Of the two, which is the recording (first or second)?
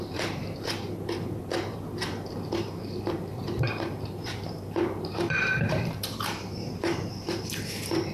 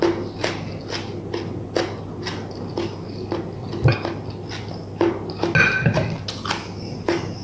second